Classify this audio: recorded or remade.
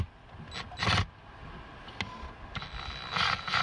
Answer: recorded